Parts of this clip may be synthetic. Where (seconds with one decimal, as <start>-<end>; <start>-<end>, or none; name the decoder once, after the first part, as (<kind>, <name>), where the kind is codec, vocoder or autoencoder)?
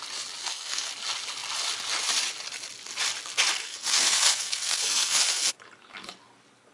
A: 0.4-0.9 (codec, SNAC); 3.6-5.5